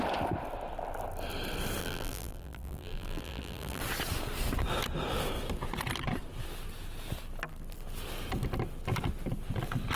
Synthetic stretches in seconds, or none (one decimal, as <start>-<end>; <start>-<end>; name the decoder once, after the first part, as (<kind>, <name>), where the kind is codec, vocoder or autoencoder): 1.8-3.8 (vocoder, BigVGAN v2)